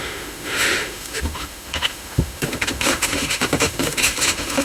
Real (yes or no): no